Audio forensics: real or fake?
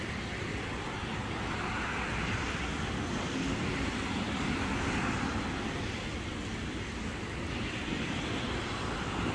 real